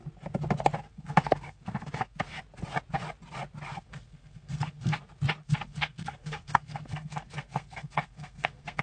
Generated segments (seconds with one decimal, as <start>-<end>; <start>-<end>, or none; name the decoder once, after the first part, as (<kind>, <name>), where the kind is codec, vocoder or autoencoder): 0.9-2.4 (codec, SNAC); 3.7-5.0; 5.4-8.8